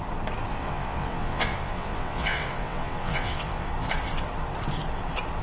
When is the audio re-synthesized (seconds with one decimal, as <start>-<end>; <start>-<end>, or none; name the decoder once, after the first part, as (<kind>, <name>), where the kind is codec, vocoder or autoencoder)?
0.5-3.7 (vocoder, WaveNeXt)